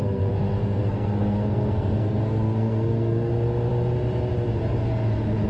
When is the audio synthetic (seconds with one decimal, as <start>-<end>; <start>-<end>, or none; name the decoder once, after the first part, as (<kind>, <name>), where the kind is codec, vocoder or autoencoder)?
0.0-3.3 (codec, SNAC)

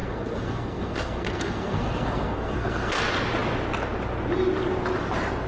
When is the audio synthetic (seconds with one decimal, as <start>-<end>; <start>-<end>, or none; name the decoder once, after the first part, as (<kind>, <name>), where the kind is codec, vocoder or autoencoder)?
0.0-3.0 (codec, SNAC)

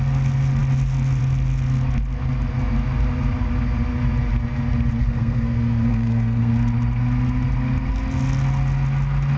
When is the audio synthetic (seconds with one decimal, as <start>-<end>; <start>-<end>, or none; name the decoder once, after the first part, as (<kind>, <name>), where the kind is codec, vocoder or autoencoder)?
5.0-6.5 (codec, SNAC)

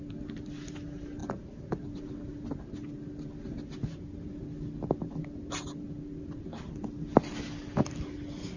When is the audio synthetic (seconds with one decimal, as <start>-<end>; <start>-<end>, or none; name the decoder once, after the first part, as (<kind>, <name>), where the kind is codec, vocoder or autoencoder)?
none

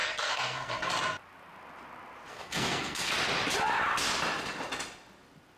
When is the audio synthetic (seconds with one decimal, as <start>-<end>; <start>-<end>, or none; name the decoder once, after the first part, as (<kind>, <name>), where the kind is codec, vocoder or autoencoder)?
0.0-0.9 (codec, SNAC); 2.3-3.1

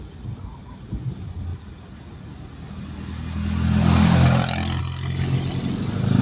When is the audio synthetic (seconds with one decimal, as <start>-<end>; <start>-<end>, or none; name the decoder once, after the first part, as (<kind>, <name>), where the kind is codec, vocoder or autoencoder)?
none

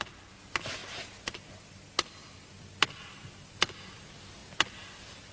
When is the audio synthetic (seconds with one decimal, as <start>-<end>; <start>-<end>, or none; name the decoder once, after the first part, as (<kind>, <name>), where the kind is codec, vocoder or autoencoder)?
none